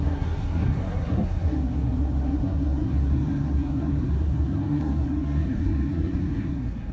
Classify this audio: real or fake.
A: fake